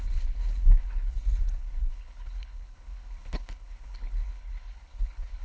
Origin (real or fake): fake